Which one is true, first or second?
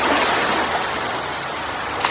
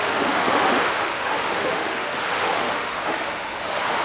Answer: first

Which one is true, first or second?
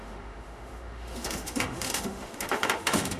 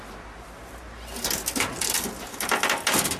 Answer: second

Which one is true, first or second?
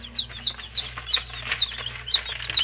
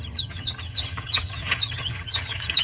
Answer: first